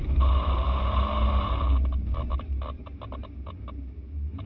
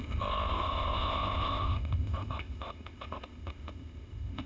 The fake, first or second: second